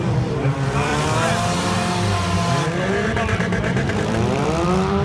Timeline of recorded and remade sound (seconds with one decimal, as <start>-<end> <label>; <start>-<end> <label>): 0.0-0.9 remade; 0.9-3.9 recorded; 3.9-5.0 remade